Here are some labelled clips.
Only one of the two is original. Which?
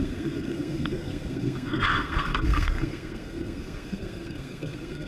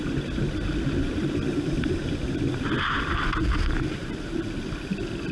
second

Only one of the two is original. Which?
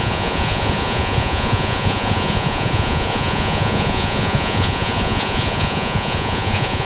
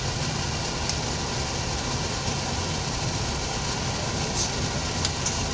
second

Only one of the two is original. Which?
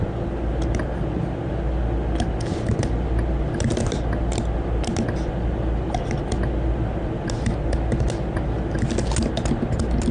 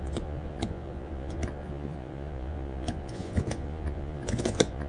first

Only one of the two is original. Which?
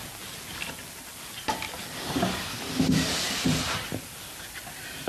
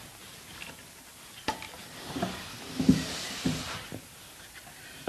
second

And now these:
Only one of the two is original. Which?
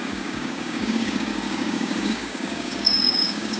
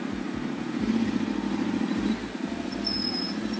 second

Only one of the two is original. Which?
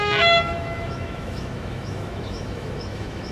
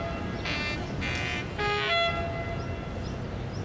second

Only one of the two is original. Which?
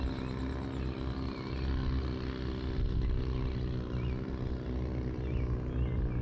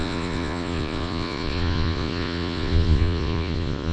first